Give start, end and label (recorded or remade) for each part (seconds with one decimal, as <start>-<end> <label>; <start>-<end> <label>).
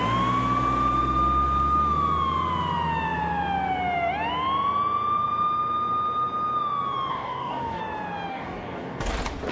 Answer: 0.0-7.1 recorded; 7.1-7.8 remade; 7.8-8.3 recorded; 8.3-9.1 remade; 9.1-9.5 recorded